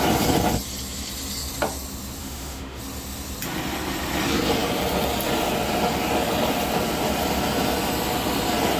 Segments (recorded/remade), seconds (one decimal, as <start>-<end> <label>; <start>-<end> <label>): 0.0-2.2 recorded; 2.2-2.8 remade; 2.8-8.8 recorded